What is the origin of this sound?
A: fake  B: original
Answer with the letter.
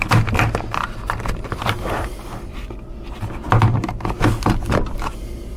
B